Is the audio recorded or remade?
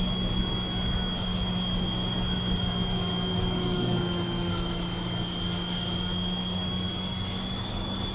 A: remade